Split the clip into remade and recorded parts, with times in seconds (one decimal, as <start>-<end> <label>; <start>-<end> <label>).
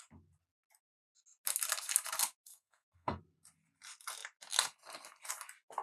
0.0-2.5 recorded; 2.5-3.2 remade; 3.2-5.8 recorded